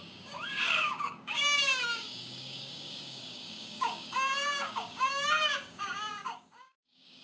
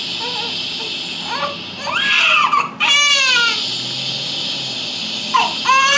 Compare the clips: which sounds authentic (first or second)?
second